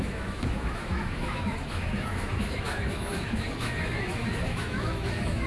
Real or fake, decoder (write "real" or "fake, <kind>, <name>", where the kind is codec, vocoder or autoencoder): fake, autoencoder, DAC-VAE